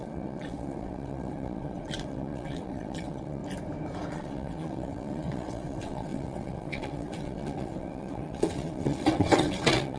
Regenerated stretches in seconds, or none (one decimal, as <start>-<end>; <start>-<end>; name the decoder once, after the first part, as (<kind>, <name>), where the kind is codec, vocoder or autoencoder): 0.0-3.4 (vocoder, WaveNeXt); 4.1-10.0